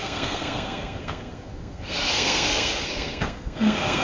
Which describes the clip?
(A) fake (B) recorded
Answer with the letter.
A